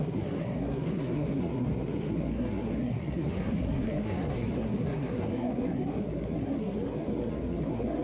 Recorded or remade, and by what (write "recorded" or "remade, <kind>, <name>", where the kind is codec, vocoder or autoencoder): remade, codec, SNAC